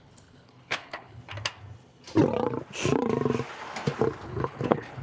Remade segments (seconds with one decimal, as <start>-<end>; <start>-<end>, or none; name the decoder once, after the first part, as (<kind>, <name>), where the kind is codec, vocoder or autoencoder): 0.0-1.2 (codec, HILCodec); 4.2-5.0